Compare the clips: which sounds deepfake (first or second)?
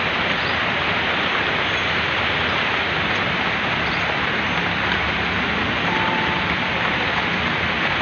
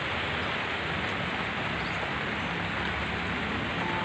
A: first